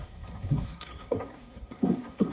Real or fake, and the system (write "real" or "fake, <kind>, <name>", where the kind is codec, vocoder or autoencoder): fake, codec, SNAC